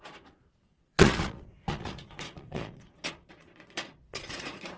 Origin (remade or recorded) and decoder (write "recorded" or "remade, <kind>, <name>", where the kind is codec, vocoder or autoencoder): remade, vocoder, Vocos